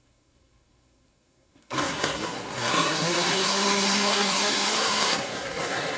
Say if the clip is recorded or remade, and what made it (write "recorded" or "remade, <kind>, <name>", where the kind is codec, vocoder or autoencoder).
remade, codec, SNAC